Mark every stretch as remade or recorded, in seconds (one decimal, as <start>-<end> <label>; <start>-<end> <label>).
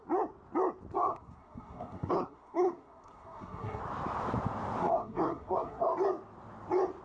0.0-1.1 recorded; 1.1-3.8 remade; 3.8-4.8 recorded; 4.8-5.8 remade; 5.8-7.0 recorded